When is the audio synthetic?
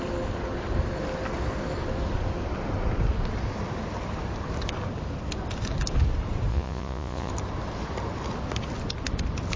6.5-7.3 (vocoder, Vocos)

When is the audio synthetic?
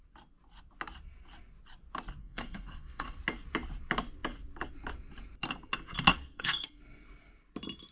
2.2-3.2 (codec, SNAC); 6.1-6.8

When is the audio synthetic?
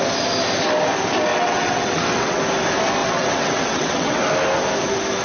1.3-2.4 (vocoder, WaveNeXt); 3.0-4.2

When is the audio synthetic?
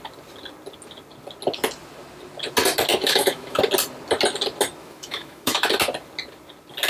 2.9-3.6 (autoencoder, DAC-VAE); 4.8-5.7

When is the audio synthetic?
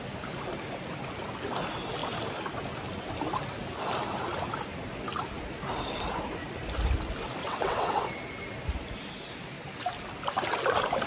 7.4-8.0 (vocoder, WaveNeXt)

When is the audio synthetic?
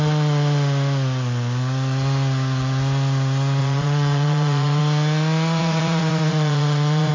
3.6-4.8 (vocoder, Vocos); 5.6-7.1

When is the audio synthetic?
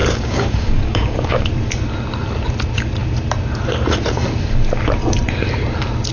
0.0-1.5 (codec, DAC)